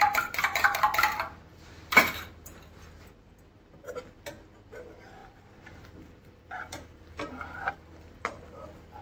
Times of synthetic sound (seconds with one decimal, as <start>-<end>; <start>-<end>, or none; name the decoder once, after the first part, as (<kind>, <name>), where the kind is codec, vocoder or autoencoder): 1.5-2.0 (vocoder, BigVGAN v2); 5.2-7.7